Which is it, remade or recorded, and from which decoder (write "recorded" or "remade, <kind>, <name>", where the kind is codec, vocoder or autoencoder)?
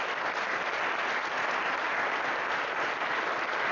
recorded